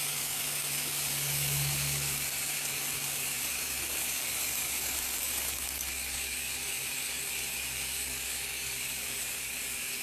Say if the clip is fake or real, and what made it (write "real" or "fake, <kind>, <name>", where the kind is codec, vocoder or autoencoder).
fake, codec, DAC